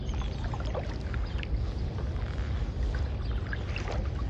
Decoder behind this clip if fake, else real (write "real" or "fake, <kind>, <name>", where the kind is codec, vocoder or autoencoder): real